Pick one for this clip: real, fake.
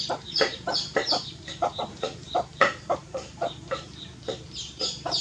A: fake